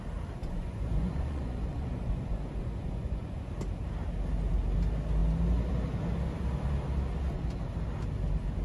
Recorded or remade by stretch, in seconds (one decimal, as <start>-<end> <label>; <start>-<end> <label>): 0.0-0.4 recorded; 0.4-3.5 remade; 3.5-8.6 recorded